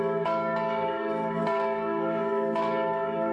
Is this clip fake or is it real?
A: fake